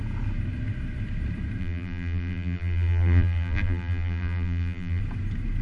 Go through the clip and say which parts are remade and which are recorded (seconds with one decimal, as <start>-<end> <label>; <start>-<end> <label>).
0.0-1.6 recorded; 1.6-5.0 remade; 5.0-5.6 recorded